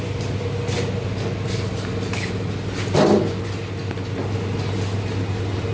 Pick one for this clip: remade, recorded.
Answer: recorded